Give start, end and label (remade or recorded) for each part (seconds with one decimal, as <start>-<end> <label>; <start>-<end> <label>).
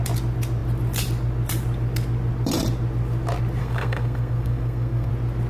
0.0-3.6 recorded; 3.6-5.1 remade; 5.1-5.5 recorded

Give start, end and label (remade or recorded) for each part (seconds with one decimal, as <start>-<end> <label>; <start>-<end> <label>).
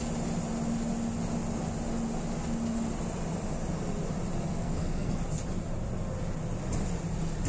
0.0-4.6 recorded; 4.6-5.2 remade; 5.2-7.5 recorded